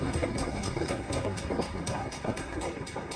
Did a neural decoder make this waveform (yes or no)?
yes